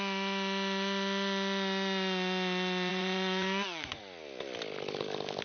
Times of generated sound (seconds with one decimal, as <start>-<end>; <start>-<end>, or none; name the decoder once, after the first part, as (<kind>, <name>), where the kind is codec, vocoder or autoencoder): 2.9-4.0 (vocoder, Vocos)